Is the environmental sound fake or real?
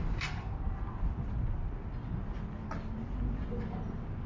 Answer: real